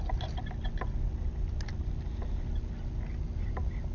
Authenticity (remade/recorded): recorded